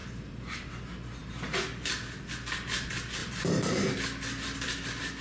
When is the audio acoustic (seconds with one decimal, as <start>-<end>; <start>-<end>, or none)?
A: 0.7-3.2; 3.9-5.2